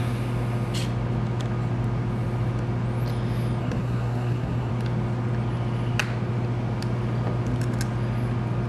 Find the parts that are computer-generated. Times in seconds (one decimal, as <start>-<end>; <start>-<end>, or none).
3.6-4.7